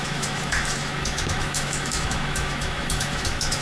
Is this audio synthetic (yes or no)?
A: yes